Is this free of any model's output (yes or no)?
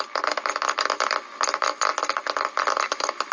yes